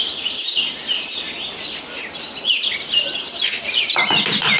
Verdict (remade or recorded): remade